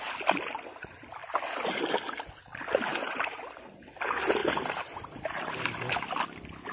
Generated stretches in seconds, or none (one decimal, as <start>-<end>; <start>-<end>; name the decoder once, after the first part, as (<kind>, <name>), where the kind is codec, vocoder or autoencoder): 2.9-3.4 (vocoder, BigVGAN v2); 4.4-5.2

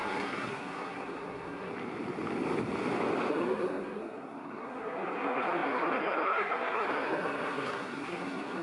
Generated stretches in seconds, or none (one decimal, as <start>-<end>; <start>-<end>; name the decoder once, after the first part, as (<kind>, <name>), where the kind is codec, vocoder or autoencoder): 0.0-1.7 (codec, SNAC); 3.3-8.6